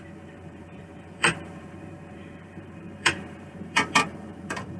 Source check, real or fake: fake